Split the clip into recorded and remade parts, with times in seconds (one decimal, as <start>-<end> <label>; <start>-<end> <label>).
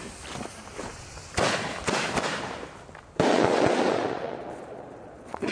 0.0-3.3 recorded; 3.3-5.5 remade